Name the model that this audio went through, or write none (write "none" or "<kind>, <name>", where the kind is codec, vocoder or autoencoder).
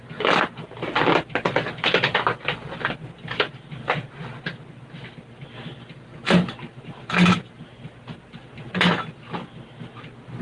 vocoder, BigVGAN v2